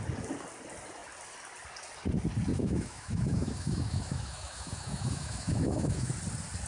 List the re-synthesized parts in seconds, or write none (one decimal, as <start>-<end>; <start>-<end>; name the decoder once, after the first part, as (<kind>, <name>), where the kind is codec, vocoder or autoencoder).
2.5-6.1 (autoencoder, DAC-VAE)